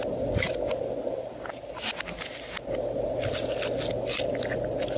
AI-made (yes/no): no